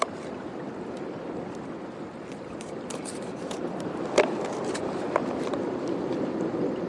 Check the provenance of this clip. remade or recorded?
remade